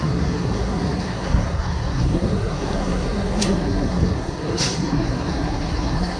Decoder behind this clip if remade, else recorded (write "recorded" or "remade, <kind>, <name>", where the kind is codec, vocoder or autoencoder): remade, codec, SNAC